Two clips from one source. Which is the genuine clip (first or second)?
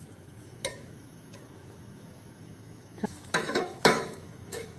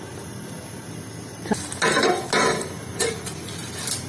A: second